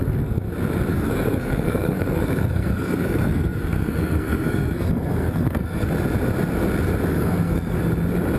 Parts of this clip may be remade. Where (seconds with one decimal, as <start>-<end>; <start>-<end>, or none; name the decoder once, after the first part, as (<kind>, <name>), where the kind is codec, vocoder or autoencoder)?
0.0-0.5 (codec, SNAC); 0.9-5.9; 7.1-7.8